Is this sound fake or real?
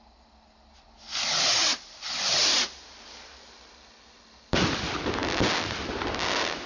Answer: real